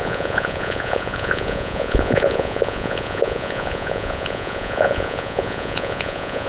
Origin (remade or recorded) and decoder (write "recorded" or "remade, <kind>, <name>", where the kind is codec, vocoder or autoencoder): remade, vocoder, Vocos